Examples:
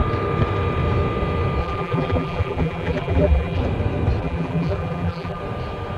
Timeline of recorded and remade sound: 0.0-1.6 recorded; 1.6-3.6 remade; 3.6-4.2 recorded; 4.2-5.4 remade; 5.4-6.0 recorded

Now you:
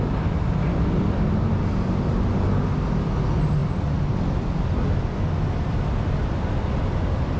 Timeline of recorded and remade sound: 0.0-7.4 recorded

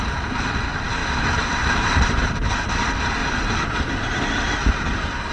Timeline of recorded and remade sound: 0.0-3.2 remade; 3.2-4.7 recorded; 4.7-5.3 remade

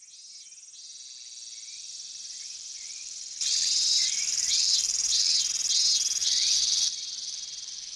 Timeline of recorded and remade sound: 0.0-1.7 recorded; 1.7-5.5 remade; 5.5-6.2 recorded; 6.2-8.0 remade

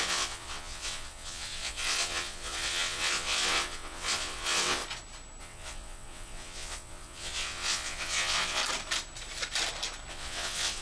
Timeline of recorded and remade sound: 0.0-4.8 remade; 4.8-5.4 recorded; 5.4-8.6 remade; 8.6-10.1 recorded; 10.1-10.8 remade

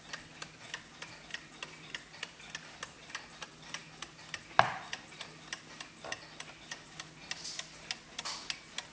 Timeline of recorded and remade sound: 0.0-8.9 recorded